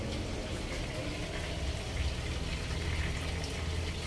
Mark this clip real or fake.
real